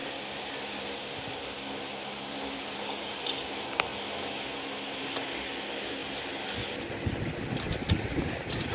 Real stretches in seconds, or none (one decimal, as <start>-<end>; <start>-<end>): 0.0-8.7